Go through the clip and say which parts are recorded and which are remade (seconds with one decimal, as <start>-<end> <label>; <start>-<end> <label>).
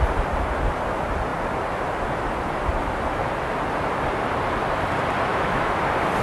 0.0-5.3 recorded; 5.3-5.8 remade; 5.8-6.2 recorded